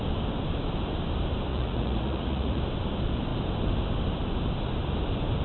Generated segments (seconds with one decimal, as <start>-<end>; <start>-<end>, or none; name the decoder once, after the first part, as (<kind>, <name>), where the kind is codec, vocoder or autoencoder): 1.5-2.6 (vocoder, Vocos)